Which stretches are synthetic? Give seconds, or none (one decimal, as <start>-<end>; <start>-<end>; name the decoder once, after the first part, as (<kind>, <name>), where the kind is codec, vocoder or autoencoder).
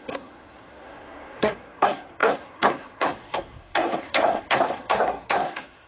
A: 0.0-5.9 (codec, SNAC)